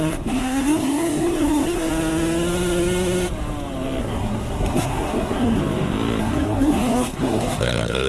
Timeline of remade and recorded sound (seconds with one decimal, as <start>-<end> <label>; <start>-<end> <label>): 0.0-1.9 remade; 1.9-4.0 recorded; 4.0-5.6 remade; 5.6-6.2 recorded; 6.2-8.1 remade